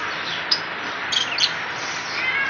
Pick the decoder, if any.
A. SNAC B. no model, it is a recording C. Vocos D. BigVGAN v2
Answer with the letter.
B